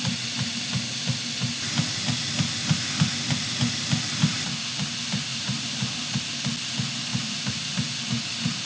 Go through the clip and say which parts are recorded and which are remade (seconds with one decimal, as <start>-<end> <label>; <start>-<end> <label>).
0.0-5.3 recorded; 5.3-6.2 remade; 6.2-7.1 recorded; 7.1-7.7 remade; 7.7-8.7 recorded